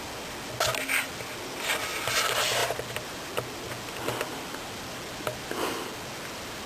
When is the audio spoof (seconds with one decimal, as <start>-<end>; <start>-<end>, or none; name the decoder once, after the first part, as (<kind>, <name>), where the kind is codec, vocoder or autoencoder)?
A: none